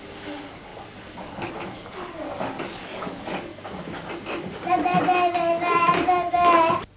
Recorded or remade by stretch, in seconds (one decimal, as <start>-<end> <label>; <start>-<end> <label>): 0.0-3.5 remade; 3.5-7.0 recorded

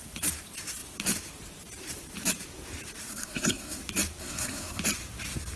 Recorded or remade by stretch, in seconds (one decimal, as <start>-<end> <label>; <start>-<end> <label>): 0.0-3.1 recorded; 3.1-3.8 remade; 3.8-4.2 recorded; 4.2-4.8 remade; 4.8-5.6 recorded

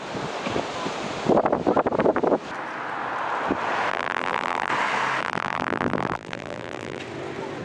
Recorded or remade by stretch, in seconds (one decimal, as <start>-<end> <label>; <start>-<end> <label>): 0.0-3.9 recorded; 3.9-4.7 remade; 4.7-5.2 recorded; 5.2-7.0 remade; 7.0-7.6 recorded

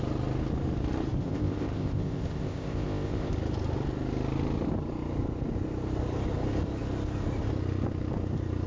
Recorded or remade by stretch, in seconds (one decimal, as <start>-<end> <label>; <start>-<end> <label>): 0.0-1.2 recorded; 1.2-3.3 remade; 3.3-8.7 recorded

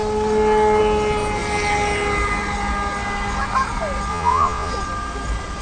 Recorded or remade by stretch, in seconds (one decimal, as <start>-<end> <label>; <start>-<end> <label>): 0.0-4.1 recorded; 4.1-4.7 remade; 4.7-5.6 recorded

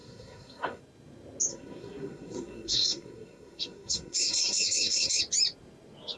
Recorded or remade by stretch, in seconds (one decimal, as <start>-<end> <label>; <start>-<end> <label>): 0.0-0.8 remade; 0.8-1.5 recorded; 1.5-5.2 remade; 5.2-6.2 recorded